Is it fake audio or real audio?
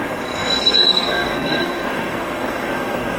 fake